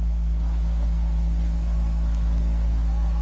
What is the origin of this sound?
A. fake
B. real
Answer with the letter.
A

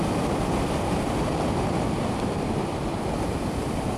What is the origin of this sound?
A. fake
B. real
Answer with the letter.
A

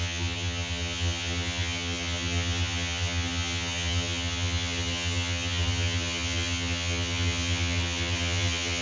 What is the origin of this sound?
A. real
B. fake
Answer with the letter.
B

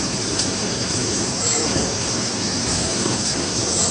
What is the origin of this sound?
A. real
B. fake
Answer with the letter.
B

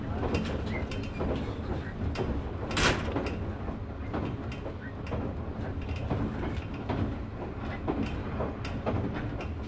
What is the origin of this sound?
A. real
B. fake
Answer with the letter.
A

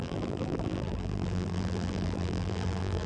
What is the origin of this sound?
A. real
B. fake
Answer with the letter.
B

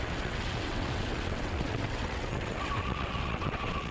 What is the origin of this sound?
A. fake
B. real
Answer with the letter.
A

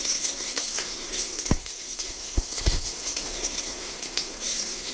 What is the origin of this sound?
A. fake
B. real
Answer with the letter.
A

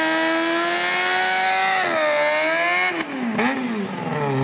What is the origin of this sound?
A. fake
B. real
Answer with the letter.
B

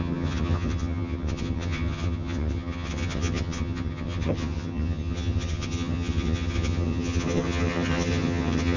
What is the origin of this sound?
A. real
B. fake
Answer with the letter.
B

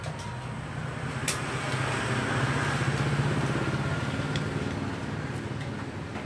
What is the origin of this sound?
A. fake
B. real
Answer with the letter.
B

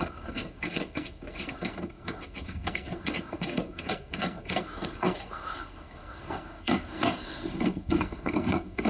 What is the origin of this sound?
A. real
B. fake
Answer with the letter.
B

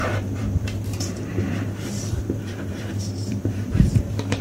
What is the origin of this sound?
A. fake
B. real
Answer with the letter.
A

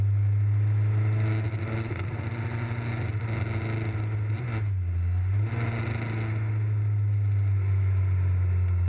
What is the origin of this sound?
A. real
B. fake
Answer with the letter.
A